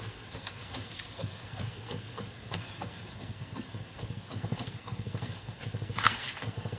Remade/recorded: remade